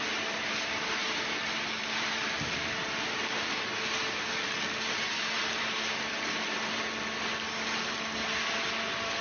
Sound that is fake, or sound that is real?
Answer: real